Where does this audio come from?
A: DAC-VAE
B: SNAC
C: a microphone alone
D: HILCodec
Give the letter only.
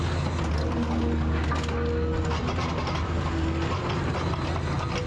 C